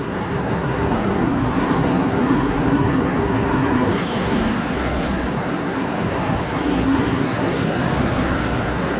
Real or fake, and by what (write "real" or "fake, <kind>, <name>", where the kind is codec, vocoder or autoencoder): fake, codec, SNAC